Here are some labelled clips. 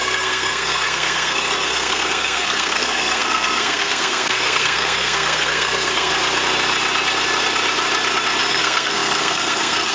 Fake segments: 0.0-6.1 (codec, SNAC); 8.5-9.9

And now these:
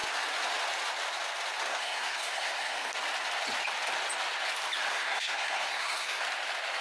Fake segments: 1.7-2.9 (codec, SNAC); 4.9-6.2